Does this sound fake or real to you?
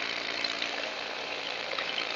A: fake